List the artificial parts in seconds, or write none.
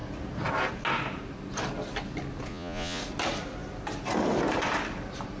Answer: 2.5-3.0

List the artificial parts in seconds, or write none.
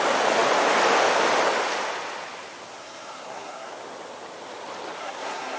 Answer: 2.8-3.7; 5.0-5.6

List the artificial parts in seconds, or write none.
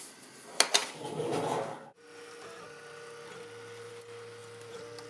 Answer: none